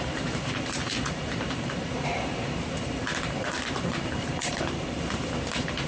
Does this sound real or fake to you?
fake